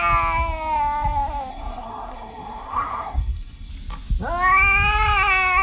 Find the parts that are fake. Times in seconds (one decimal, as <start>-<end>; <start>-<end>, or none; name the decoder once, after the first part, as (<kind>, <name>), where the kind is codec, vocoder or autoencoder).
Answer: 1.5-3.7 (codec, SNAC)